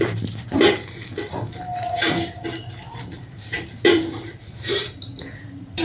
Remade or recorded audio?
remade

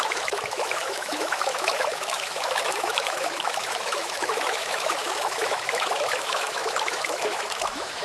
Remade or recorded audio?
remade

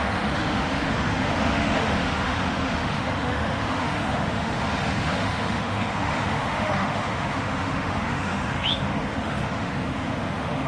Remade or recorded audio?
remade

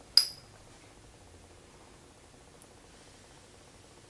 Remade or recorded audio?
recorded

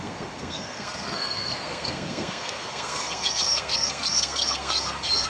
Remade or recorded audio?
remade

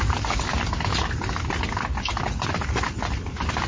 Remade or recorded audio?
recorded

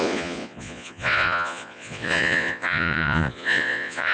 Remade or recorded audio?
remade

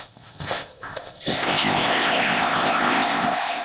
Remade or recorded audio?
remade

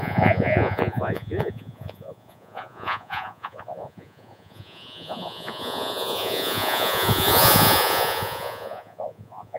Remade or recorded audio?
remade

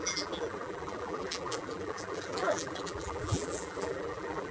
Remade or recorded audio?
remade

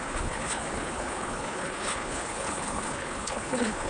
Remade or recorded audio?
remade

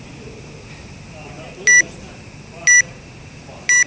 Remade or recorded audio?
recorded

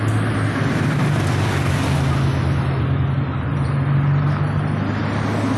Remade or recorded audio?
recorded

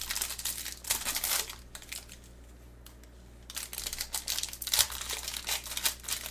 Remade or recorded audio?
recorded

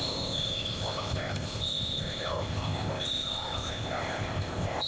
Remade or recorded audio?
remade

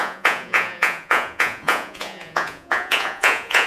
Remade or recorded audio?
remade